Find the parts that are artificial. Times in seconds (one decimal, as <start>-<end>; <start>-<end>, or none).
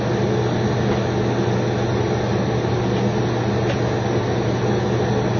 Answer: none